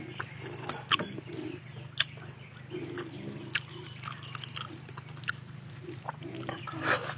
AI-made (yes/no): no